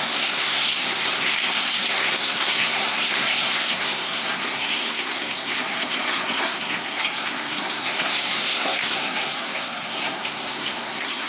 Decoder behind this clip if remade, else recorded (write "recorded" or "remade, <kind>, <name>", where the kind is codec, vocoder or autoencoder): remade, codec, SNAC